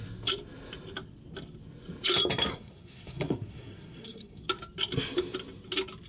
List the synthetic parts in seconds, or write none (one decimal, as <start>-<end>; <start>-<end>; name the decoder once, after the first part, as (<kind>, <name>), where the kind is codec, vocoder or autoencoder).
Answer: 2.5-4.4 (codec, SNAC)

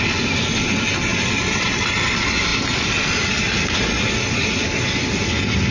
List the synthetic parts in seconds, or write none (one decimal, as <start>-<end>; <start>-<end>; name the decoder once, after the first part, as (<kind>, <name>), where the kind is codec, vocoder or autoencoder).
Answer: 1.1-1.8 (vocoder, BigVGAN v2)

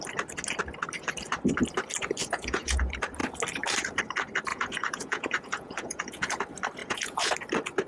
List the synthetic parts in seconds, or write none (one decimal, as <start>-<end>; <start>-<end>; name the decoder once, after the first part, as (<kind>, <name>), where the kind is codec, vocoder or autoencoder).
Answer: 2.2-2.8 (vocoder, Vocos); 4.5-6.3; 6.8-7.3

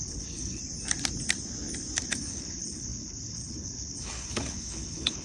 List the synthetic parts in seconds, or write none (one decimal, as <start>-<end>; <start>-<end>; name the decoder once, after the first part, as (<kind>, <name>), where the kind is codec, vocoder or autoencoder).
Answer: 0.0-0.6 (codec, HILCodec); 2.1-5.2

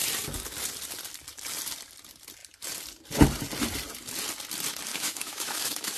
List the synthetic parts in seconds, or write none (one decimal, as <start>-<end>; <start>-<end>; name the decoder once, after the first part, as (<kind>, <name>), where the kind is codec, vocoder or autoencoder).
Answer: 4.9-6.0 (autoencoder, DAC-VAE)

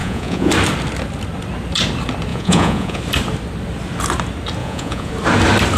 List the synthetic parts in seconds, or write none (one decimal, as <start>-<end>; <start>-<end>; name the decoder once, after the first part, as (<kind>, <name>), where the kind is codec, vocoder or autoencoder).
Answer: 0.0-0.5 (vocoder, Vocos); 2.3-3.0; 4.6-5.1

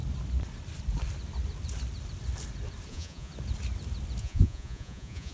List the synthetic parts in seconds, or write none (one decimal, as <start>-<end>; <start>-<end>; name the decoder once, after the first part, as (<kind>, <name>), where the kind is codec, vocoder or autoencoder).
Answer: 2.9-3.3 (vocoder, Vocos); 4.2-5.3

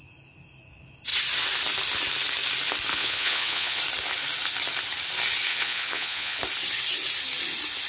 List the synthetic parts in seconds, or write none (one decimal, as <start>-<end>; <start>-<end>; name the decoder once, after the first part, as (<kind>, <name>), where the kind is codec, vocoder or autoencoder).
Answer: 2.9-3.8 (vocoder, Vocos); 5.5-6.4